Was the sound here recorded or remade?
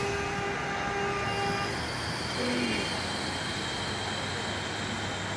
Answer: recorded